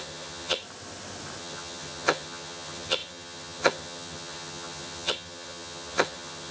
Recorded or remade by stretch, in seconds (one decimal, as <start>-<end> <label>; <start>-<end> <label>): 0.0-0.6 remade; 0.6-1.4 recorded; 1.4-6.5 remade